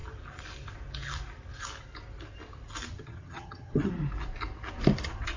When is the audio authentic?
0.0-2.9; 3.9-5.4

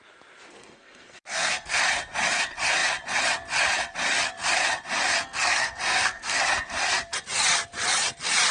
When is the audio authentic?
0.0-0.6; 1.8-5.2; 6.4-8.5